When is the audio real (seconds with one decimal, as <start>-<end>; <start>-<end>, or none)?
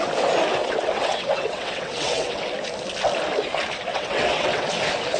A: 0.0-0.6; 2.4-3.9; 4.7-5.2